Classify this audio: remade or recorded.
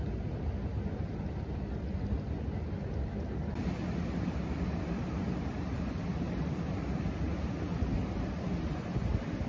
recorded